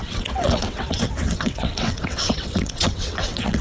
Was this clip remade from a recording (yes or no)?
yes